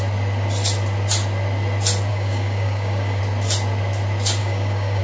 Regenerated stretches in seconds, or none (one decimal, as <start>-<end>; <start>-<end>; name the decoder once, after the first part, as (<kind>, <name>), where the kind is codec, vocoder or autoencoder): 2.1-3.2 (codec, DAC); 4.4-5.0